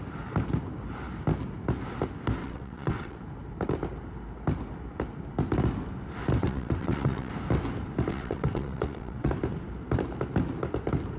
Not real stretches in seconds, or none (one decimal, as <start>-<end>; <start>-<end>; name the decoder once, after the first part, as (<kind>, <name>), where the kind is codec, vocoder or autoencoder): 2.4-3.2 (vocoder, WaveNeXt); 6.4-7.3; 8.1-9.3